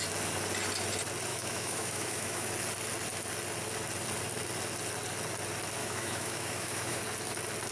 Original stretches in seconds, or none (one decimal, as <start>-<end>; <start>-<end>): 0.0-1.3; 2.5-5.8; 7.0-7.7